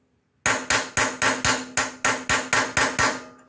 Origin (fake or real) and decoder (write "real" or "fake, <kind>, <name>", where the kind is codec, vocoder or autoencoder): real